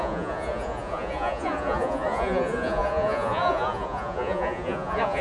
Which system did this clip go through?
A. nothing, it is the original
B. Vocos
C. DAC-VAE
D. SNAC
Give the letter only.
B